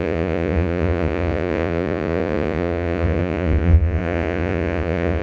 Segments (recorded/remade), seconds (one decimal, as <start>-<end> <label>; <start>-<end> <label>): 0.0-5.2 remade